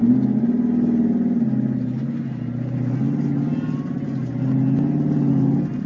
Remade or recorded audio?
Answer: recorded